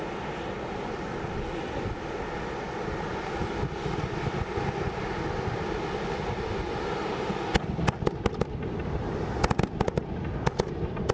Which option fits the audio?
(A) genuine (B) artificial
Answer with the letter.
A